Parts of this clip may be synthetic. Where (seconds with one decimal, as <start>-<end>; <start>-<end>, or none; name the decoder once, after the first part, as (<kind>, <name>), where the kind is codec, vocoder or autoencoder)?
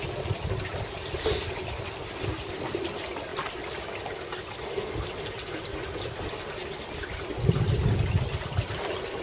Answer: none